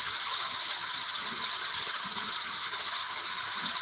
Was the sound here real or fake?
fake